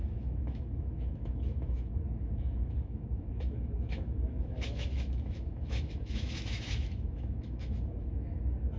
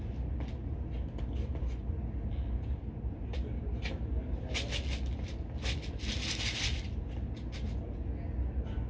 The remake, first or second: first